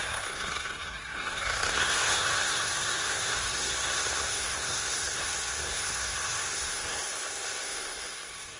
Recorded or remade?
remade